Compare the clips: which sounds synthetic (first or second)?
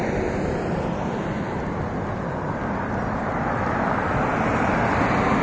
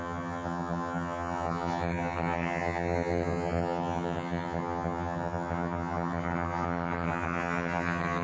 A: second